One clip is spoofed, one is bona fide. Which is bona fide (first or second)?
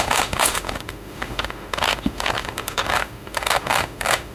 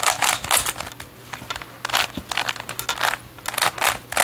second